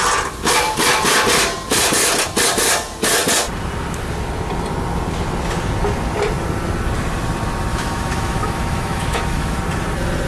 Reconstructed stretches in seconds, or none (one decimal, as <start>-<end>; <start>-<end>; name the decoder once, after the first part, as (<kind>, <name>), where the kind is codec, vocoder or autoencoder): 7.7-9.6 (autoencoder, DAC-VAE)